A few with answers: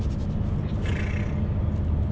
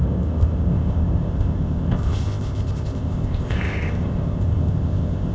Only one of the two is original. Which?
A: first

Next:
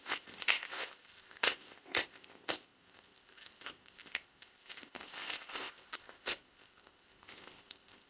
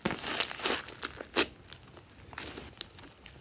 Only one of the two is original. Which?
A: second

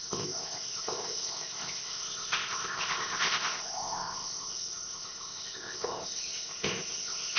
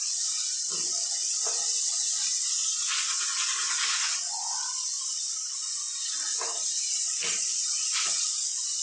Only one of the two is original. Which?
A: second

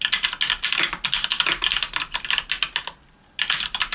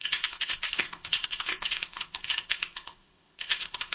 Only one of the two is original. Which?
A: first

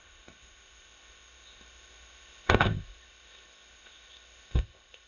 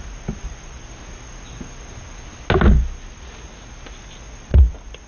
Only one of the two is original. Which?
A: second